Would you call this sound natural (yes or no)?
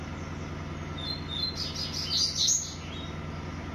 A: yes